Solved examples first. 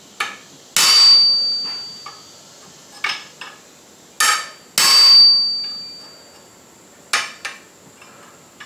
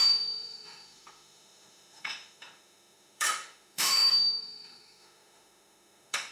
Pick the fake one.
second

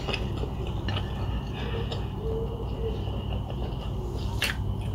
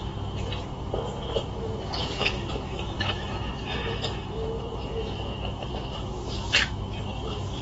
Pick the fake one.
second